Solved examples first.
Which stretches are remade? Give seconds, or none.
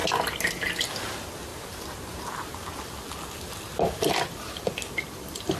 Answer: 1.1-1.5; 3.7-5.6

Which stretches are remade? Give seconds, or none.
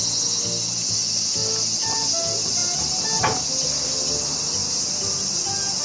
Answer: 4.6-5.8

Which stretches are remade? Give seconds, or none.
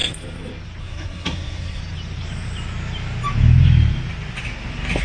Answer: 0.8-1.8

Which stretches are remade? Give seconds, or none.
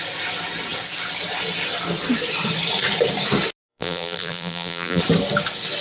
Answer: 3.7-5.0